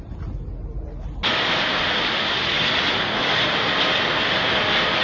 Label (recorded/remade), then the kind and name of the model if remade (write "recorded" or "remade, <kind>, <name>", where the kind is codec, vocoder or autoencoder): recorded